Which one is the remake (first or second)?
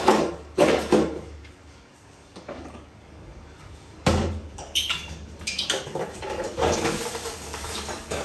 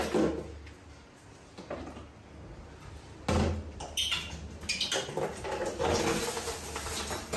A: first